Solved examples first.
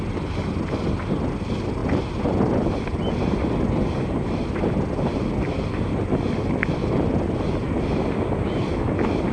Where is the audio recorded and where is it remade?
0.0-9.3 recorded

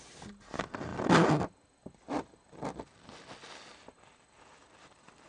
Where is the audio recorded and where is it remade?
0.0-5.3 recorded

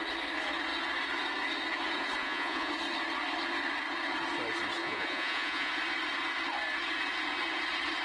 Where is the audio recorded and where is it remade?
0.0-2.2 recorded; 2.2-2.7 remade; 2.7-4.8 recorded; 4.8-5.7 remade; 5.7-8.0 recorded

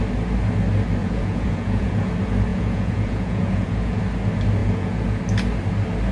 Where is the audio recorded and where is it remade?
0.0-1.0 recorded; 1.0-2.1 remade; 2.1-2.5 recorded; 2.5-4.0 remade; 4.0-4.6 recorded; 4.6-5.2 remade; 5.2-6.1 recorded